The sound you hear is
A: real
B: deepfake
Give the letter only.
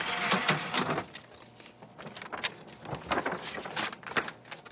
A